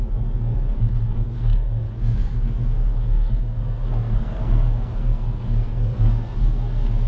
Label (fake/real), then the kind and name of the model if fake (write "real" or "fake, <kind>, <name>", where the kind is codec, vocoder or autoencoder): fake, codec, SNAC